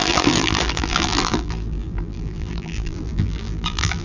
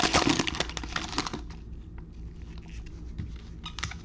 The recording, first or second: second